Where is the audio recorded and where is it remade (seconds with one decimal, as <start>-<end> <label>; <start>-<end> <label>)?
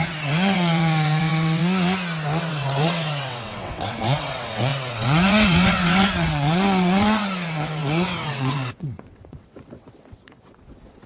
0.0-1.6 remade; 1.6-2.4 recorded; 2.4-11.1 remade